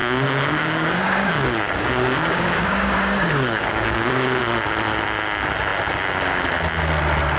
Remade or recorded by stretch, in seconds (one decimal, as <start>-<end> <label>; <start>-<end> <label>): 0.0-4.4 remade; 4.4-7.4 recorded